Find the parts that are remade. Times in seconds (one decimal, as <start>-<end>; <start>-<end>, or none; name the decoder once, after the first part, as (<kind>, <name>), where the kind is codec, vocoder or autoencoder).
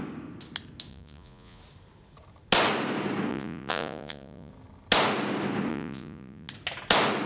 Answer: 0.9-1.6 (vocoder, Vocos); 3.3-4.5; 5.7-6.5